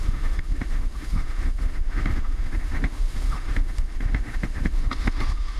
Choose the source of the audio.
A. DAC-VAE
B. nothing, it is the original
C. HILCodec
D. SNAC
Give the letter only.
A